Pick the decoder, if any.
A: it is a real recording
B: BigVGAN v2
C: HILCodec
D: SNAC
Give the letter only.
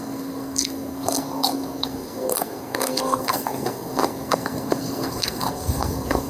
D